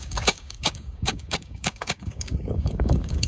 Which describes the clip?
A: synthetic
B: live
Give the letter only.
A